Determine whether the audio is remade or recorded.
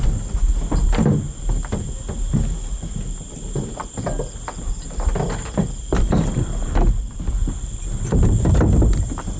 recorded